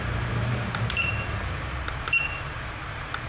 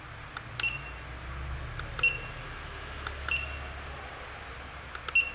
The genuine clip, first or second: second